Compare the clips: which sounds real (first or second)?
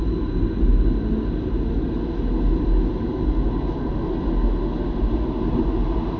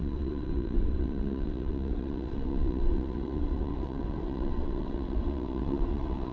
first